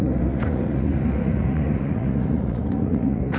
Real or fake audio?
fake